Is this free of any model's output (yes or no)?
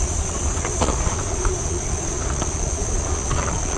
no